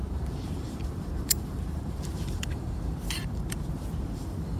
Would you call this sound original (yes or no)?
no